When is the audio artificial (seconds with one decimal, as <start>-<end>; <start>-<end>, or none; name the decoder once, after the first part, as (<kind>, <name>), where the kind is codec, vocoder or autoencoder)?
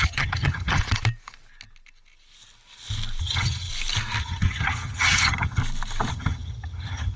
0.0-0.8 (vocoder, HiFi-GAN); 3.2-3.7; 4.2-5.6; 6.1-7.2